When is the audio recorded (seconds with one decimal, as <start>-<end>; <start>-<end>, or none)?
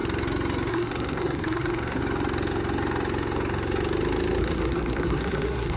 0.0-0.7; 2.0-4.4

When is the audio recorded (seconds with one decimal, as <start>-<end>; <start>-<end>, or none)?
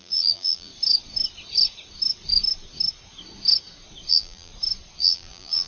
0.7-4.1; 4.5-5.0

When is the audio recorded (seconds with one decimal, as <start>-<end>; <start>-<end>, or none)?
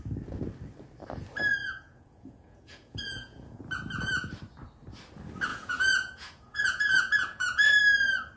0.0-1.6; 3.6-5.5; 7.8-8.4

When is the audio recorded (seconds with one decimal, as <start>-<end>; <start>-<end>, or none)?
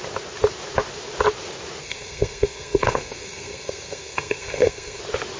0.0-1.8; 5.0-5.4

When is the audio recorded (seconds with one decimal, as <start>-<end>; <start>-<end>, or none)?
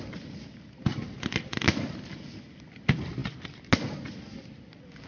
0.0-5.1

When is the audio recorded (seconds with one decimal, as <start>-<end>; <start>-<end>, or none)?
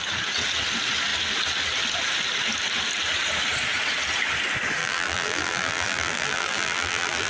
0.0-4.8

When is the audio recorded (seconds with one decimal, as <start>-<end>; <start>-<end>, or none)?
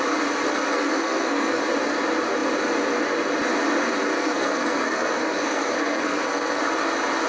0.0-0.5; 1.6-4.1; 6.6-7.3